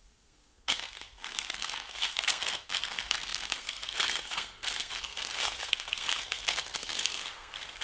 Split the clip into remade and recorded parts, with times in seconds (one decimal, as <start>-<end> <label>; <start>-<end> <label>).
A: 0.0-7.8 remade